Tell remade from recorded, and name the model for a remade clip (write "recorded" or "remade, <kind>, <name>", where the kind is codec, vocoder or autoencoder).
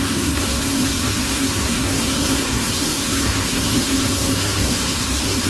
remade, codec, SNAC